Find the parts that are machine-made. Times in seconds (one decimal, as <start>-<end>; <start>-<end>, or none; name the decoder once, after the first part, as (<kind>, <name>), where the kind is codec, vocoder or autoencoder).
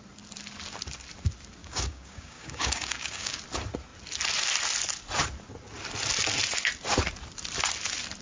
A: 1.6-3.4 (codec, DAC)